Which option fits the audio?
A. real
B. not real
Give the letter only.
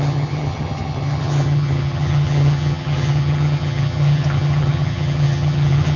B